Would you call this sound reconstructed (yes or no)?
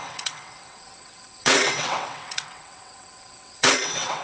yes